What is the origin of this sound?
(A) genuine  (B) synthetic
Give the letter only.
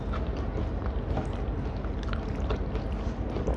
A